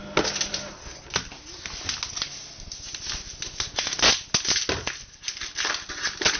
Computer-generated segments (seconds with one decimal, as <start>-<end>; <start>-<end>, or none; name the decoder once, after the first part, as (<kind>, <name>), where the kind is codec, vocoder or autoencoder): none